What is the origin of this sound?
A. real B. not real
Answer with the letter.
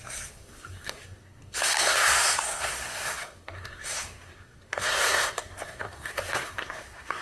B